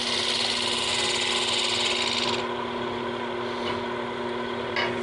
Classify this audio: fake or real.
real